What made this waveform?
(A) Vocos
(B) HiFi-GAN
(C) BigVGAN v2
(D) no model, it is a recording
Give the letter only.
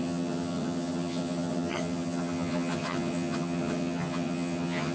B